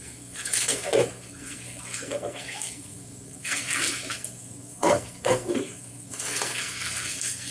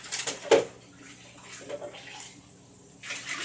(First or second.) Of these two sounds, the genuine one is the second